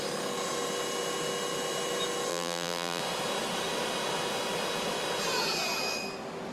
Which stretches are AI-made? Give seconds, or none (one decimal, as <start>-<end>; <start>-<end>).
2.3-3.0